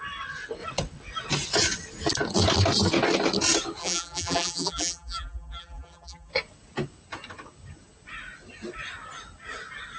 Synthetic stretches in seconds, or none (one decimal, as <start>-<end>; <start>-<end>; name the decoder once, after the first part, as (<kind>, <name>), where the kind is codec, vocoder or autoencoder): 3.8-6.3 (vocoder, BigVGAN v2)

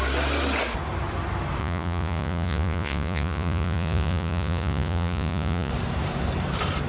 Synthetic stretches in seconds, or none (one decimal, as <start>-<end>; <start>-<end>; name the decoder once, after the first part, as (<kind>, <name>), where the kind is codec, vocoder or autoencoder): 1.6-5.7 (vocoder, Vocos)

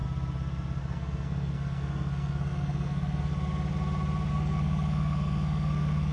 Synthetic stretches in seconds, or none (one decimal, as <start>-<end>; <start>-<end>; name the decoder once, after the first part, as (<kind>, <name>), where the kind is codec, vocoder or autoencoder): 0.8-3.3 (codec, SNAC); 4.3-6.1

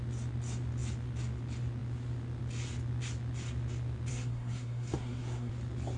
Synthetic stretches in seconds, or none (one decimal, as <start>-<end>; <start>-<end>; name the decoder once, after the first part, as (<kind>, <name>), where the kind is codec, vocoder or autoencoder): 4.1-5.5 (codec, SNAC)

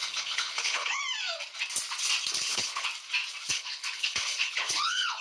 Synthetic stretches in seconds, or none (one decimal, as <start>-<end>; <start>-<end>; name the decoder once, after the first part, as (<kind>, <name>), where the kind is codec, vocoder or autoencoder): 0.0-1.0 (codec, HILCodec); 2.3-2.9; 3.5-5.2